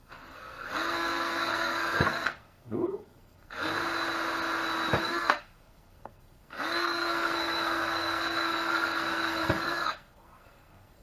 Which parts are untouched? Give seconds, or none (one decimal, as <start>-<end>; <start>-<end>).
3.7-5.0